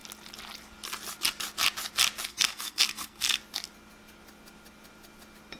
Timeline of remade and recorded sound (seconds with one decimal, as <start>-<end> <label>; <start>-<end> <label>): 0.0-2.3 recorded; 2.3-3.4 remade; 3.4-5.6 recorded